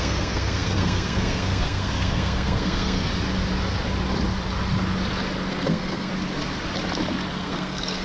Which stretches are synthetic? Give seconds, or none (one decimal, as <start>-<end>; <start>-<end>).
0.0-3.1; 5.5-6.1; 7.3-8.0